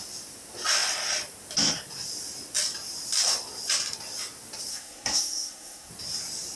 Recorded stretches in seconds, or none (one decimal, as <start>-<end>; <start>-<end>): 0.0-4.7; 5.9-6.6